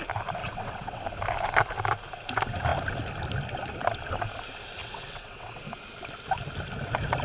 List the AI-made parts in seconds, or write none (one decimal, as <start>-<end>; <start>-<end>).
0.4-1.0; 4.8-5.6